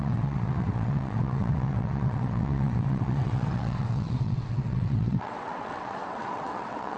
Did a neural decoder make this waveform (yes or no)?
yes